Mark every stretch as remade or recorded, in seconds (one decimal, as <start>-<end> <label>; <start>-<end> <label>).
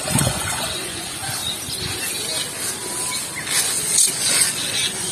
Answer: 0.0-1.4 remade; 1.4-3.6 recorded; 3.6-5.1 remade